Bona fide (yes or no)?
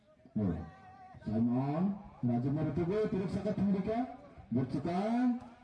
yes